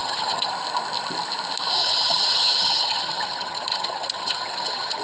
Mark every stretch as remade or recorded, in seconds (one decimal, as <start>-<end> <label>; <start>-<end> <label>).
0.0-0.5 remade; 0.5-1.8 recorded; 1.8-5.0 remade